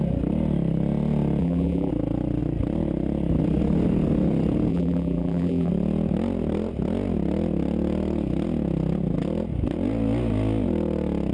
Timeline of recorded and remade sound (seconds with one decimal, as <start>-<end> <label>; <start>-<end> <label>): 0.0-1.4 recorded; 1.4-1.9 remade; 1.9-4.7 recorded; 4.7-5.7 remade; 5.7-11.3 recorded